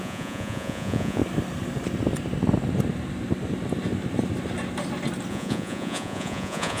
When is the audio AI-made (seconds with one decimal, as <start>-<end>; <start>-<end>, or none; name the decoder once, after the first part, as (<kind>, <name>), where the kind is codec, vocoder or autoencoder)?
0.0-1.2 (vocoder, Vocos); 5.3-6.8

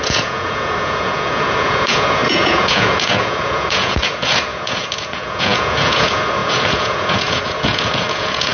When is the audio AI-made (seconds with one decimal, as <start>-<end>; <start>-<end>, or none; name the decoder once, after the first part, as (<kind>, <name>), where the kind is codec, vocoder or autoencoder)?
0.0-8.5 (vocoder, Vocos)

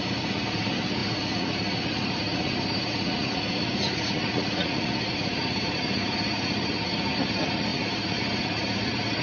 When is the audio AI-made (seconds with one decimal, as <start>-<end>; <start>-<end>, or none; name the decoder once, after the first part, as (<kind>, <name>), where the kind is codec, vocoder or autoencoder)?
0.0-9.2 (vocoder, Vocos)

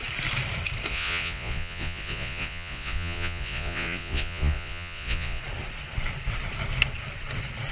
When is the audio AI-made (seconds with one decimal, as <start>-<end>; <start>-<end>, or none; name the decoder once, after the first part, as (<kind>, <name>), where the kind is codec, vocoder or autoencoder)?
0.9-5.4 (vocoder, Vocos)

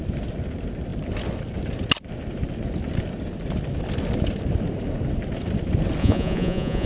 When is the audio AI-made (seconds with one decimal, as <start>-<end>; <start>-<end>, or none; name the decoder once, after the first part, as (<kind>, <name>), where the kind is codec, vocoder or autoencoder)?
6.0-6.9 (vocoder, Vocos)

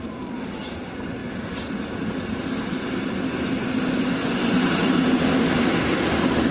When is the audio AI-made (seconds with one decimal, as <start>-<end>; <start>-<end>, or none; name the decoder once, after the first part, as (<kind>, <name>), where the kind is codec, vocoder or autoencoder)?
4.2-4.8 (vocoder, Vocos)

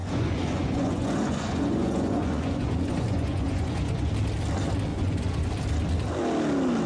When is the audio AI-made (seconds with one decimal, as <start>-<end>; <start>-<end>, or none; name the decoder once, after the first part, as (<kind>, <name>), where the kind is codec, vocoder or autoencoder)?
0.0-4.1 (vocoder, Vocos); 4.9-5.5

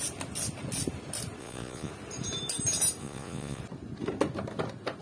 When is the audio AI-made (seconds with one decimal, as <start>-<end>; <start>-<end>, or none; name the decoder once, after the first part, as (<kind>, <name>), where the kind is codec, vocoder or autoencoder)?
1.4-1.9 (vocoder, Vocos); 3.0-3.6